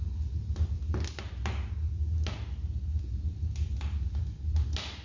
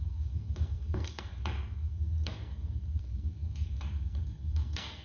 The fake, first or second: second